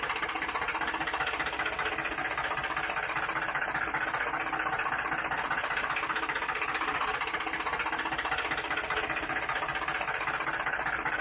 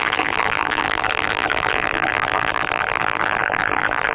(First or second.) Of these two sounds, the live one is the first